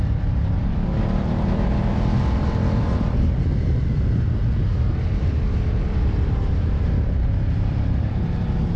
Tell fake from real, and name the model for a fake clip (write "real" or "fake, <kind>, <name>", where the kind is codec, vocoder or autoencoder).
fake, vocoder, BigVGAN v2